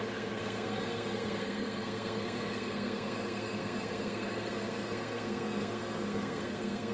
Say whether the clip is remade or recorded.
remade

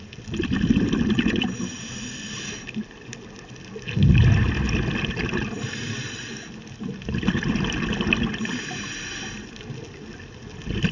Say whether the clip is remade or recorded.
recorded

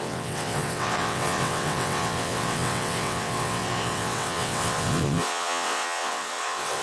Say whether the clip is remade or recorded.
remade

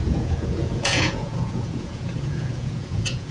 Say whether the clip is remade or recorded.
remade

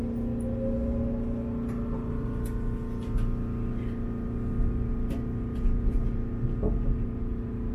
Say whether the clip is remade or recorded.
recorded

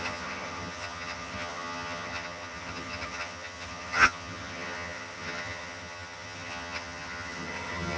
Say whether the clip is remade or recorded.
remade